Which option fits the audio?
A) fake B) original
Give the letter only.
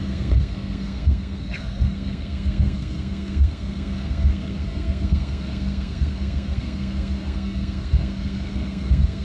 A